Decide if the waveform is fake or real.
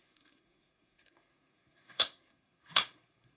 fake